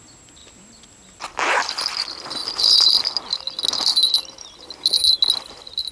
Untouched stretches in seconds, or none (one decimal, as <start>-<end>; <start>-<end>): 0.0-0.4; 1.9-5.9